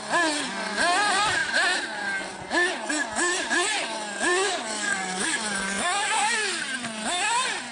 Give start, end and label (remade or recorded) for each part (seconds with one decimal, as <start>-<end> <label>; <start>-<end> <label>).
0.0-4.3 recorded; 4.3-6.6 remade; 6.6-7.7 recorded